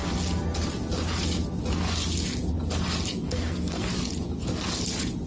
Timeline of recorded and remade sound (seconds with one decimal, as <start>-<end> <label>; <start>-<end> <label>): 0.0-3.1 recorded; 3.1-3.9 remade; 3.9-5.3 recorded

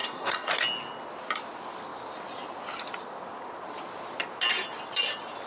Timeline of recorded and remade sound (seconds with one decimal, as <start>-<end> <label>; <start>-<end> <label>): 0.0-0.5 remade; 0.5-5.5 recorded